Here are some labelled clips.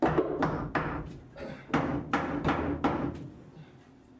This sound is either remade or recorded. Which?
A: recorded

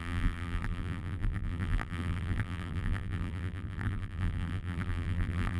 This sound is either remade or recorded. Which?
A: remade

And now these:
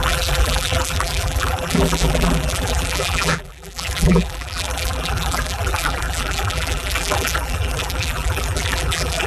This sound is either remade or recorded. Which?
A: remade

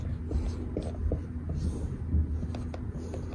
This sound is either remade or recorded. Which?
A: recorded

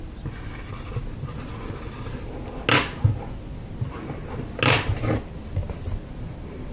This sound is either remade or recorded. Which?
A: recorded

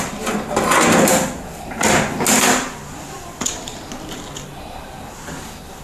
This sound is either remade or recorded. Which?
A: recorded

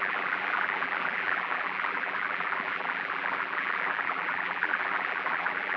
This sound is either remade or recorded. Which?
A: remade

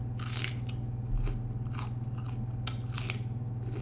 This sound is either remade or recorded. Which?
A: recorded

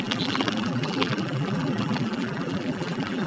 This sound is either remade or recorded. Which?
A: remade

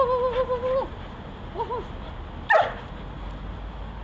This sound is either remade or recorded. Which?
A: recorded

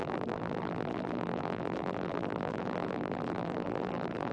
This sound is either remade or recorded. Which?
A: remade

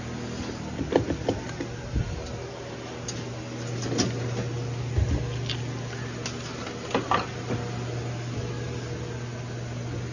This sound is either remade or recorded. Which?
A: recorded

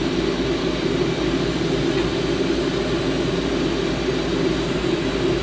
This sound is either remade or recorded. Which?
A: recorded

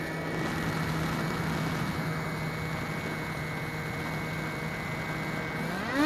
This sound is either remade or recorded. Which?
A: recorded